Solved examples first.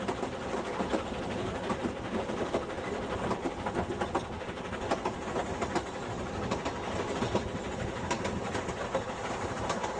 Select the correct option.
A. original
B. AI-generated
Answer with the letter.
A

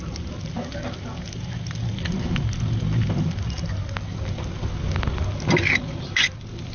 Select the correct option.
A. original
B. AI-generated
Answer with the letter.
A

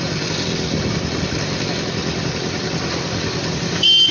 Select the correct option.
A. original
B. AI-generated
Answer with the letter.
A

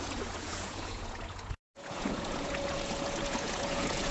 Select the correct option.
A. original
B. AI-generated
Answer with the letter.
B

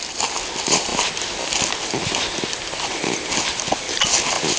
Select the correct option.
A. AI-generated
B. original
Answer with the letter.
B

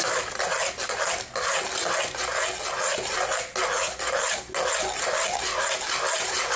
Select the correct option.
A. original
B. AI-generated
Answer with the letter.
A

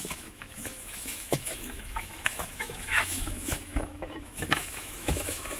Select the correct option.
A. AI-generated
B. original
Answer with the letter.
A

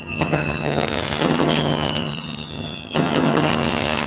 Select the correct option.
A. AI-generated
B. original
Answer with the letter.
A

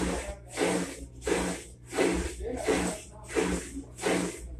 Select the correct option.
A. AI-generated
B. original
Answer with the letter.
B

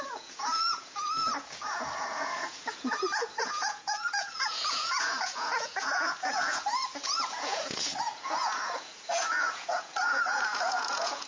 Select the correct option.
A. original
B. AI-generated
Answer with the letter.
B